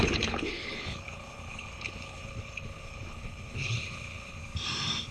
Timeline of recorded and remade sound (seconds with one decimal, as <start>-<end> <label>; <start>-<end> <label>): 0.0-4.4 remade; 4.4-5.1 recorded